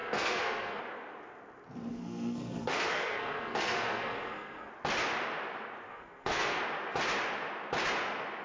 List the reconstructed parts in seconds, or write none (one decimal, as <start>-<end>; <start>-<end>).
0.0-0.8; 1.9-4.7; 5.9-6.6